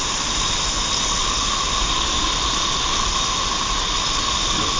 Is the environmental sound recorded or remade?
recorded